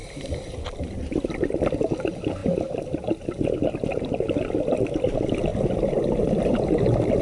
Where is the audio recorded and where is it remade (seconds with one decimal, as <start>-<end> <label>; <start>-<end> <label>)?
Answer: 0.0-7.2 recorded